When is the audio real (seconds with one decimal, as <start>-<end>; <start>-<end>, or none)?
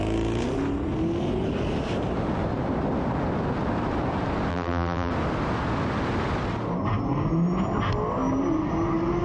0.0-4.5; 5.1-9.2